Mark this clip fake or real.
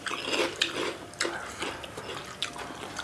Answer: real